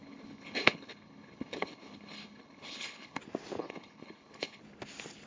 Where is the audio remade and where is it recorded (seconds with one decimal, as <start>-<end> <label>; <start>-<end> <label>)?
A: 0.0-3.2 remade; 3.2-3.6 recorded; 3.6-4.6 remade; 4.6-5.3 recorded